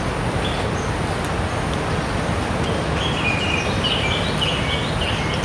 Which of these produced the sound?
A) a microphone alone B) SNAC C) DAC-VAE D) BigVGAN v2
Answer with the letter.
A